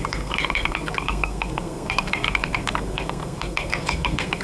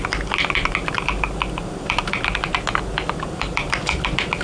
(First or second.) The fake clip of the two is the first